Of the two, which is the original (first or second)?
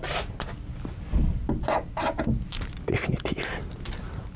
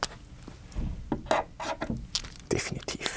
second